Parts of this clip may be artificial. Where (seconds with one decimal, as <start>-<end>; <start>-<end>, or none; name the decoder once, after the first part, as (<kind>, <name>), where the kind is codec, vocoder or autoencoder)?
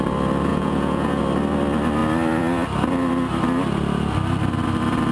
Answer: 0.5-1.2 (vocoder, Vocos)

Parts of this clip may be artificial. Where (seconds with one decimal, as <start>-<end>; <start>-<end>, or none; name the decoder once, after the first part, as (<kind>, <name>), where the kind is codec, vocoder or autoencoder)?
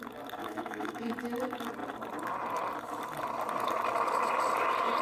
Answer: 0.4-1.1 (autoencoder, DAC-VAE)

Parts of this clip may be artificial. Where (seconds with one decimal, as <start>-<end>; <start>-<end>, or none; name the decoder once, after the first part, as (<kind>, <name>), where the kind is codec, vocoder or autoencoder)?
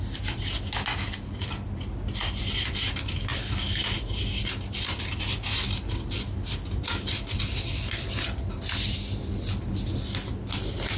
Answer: none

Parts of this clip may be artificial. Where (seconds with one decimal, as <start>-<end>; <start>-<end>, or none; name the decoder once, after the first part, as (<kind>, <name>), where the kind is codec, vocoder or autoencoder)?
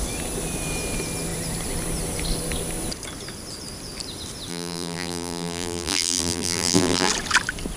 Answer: 4.5-7.1 (vocoder, BigVGAN v2)